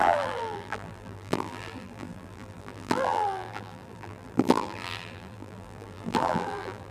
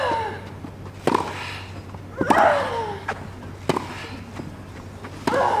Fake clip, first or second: first